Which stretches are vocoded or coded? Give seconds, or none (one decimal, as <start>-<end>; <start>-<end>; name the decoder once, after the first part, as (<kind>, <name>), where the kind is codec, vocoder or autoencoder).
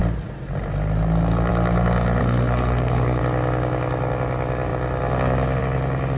2.2-3.2 (codec, SNAC)